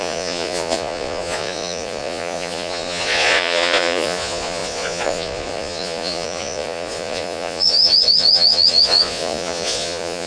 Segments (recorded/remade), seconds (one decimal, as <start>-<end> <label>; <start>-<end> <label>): 0.0-10.3 remade